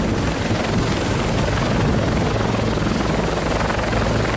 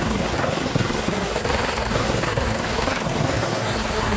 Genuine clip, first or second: first